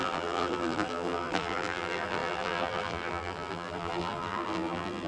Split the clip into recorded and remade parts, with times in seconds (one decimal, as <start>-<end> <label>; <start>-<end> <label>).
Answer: 0.0-5.1 remade